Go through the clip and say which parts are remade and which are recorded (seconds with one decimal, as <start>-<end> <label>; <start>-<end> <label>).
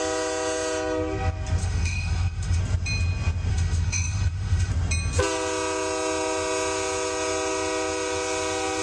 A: 0.0-1.6 recorded; 1.6-2.6 remade; 2.6-3.5 recorded; 3.5-4.7 remade; 4.7-8.8 recorded